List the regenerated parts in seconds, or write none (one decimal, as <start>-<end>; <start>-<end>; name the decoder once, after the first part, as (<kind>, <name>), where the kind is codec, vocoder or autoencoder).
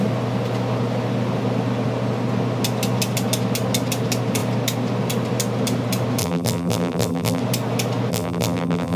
6.2-7.4 (vocoder, BigVGAN v2); 8.1-9.0